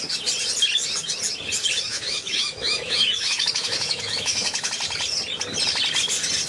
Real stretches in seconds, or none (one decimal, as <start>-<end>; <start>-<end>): 0.0-1.9; 4.7-6.5

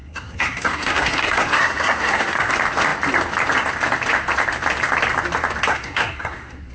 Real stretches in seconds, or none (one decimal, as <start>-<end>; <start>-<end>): 2.5-5.7

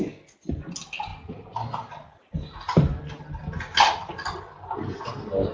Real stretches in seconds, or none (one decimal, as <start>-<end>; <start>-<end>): 0.0-5.5